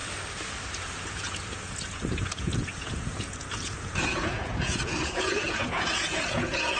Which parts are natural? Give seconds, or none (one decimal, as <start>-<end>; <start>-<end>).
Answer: 0.0-0.8